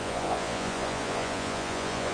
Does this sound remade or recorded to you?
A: remade